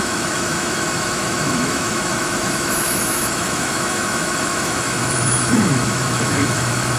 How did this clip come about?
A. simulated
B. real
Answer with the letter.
A